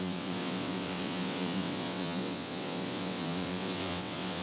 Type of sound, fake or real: fake